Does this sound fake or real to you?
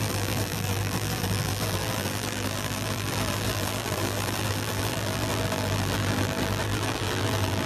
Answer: fake